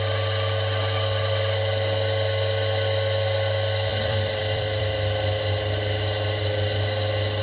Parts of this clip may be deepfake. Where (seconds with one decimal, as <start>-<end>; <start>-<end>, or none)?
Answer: 3.9-4.8